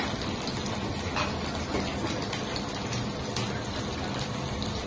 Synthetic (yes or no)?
no